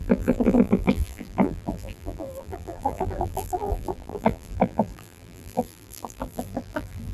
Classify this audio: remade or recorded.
remade